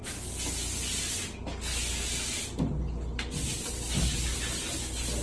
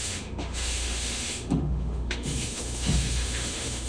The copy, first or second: second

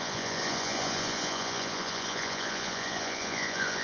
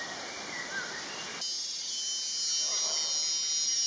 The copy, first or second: first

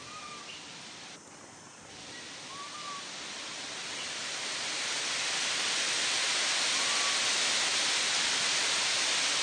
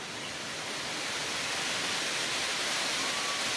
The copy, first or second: first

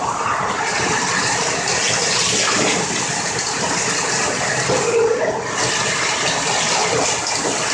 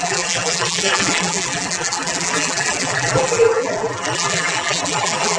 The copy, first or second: second